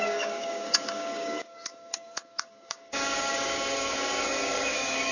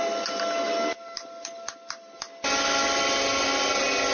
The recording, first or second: second